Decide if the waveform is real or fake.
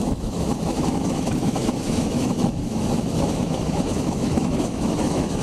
fake